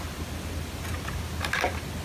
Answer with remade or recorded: recorded